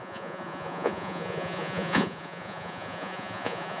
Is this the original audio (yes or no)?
no